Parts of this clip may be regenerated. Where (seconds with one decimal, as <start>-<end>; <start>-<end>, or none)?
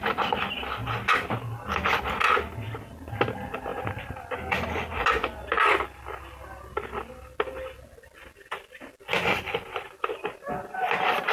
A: none